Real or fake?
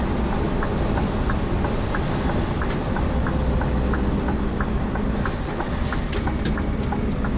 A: real